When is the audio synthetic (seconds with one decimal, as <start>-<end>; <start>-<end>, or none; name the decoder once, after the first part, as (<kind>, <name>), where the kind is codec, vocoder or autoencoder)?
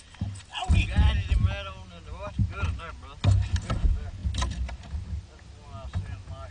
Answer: none